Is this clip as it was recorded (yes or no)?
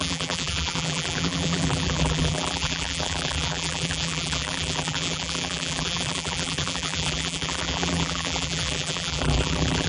no